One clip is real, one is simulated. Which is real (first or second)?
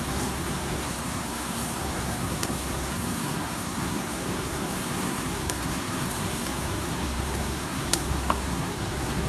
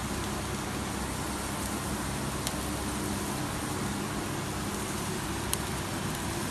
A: second